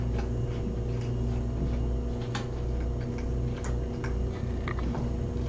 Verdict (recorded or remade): recorded